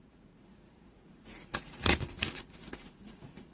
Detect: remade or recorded remade